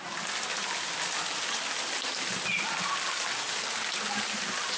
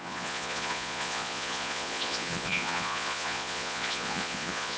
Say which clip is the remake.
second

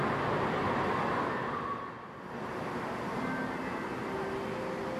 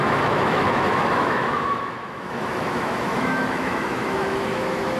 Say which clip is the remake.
second